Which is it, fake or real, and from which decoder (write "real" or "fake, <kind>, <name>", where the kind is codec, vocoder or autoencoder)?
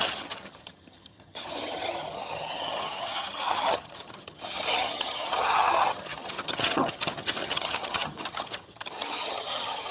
fake, vocoder, HiFi-GAN